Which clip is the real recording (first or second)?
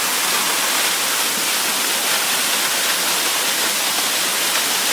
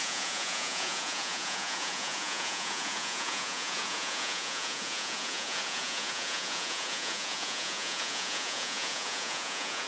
first